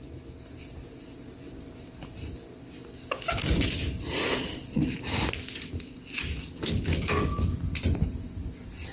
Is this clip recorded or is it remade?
recorded